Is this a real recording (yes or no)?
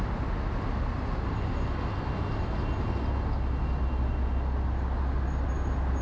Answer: yes